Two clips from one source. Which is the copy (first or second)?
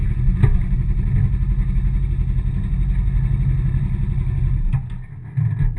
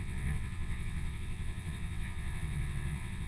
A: second